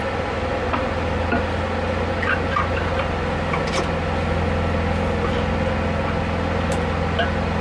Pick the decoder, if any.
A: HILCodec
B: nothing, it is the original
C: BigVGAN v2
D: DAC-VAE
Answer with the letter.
B